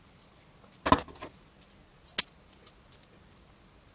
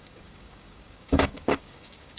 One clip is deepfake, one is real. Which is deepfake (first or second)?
second